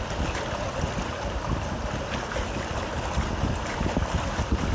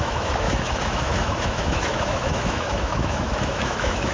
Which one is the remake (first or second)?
second